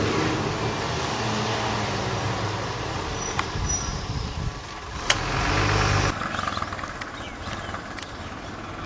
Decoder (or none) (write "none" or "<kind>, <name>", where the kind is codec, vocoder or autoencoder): none